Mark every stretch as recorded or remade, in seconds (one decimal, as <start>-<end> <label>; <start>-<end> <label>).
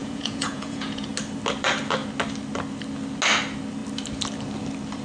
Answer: 0.0-1.1 remade; 1.1-5.0 recorded